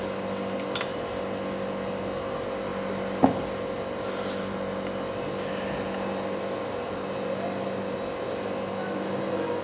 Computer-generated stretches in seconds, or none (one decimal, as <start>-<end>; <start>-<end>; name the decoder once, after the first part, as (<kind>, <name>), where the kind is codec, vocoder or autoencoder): none